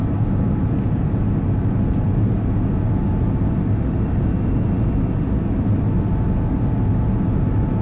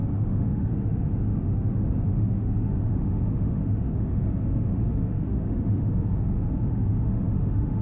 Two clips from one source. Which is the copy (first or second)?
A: second